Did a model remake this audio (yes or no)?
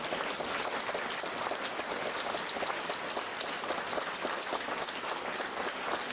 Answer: no